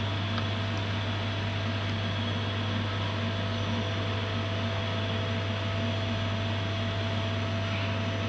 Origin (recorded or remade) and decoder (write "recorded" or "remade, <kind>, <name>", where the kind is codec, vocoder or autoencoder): recorded